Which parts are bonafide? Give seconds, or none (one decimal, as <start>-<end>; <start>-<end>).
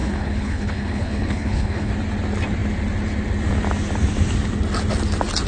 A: 1.9-5.5